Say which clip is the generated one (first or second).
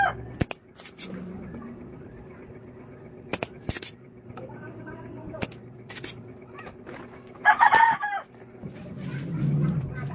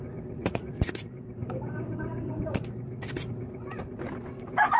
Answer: second